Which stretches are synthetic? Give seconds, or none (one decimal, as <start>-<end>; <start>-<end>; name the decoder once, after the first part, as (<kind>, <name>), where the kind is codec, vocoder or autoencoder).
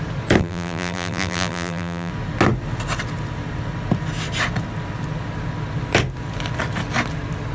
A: 0.4-2.1 (vocoder, BigVGAN v2)